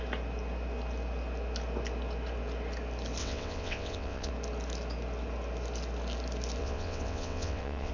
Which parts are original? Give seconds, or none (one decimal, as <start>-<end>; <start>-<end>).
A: 0.0-3.2; 4.3-6.6